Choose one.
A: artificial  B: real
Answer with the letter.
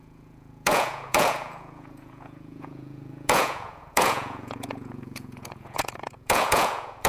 A